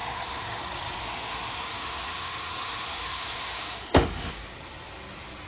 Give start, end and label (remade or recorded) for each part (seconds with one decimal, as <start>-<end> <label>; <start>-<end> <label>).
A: 0.0-0.6 remade; 0.6-1.0 recorded; 1.0-4.3 remade; 4.3-5.5 recorded